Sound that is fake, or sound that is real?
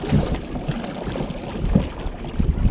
real